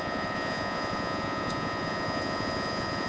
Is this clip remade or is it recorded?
remade